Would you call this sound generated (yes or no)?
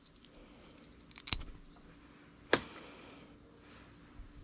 no